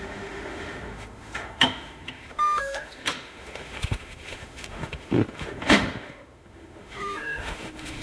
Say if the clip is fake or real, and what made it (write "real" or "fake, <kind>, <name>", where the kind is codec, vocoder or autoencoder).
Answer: fake, autoencoder, DAC-VAE